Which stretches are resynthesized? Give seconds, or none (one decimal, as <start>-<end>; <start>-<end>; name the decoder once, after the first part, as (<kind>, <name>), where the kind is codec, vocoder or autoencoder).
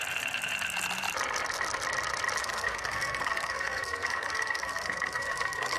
2.4-5.8 (codec, SNAC)